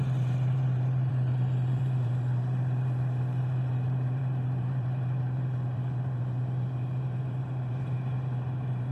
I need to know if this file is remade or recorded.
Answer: remade